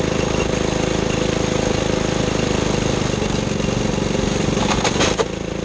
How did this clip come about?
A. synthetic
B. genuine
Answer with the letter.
B